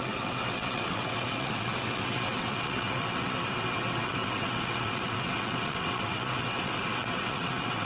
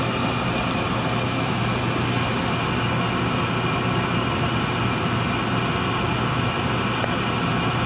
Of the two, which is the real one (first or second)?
second